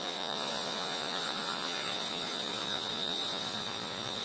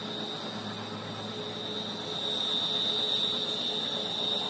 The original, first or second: second